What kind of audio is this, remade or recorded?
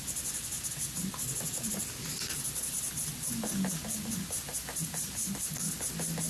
recorded